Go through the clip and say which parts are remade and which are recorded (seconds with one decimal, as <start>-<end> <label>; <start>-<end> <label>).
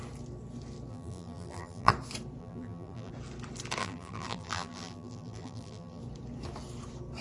0.0-0.9 recorded; 0.9-1.9 remade; 1.9-2.4 recorded; 2.4-3.1 remade; 3.1-3.8 recorded; 3.8-6.0 remade; 6.0-7.2 recorded